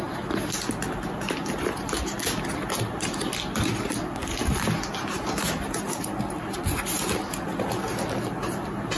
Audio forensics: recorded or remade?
recorded